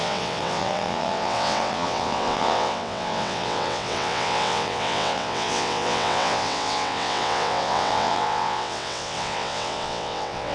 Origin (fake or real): fake